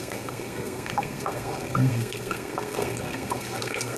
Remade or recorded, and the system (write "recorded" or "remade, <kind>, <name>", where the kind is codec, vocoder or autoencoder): remade, codec, SNAC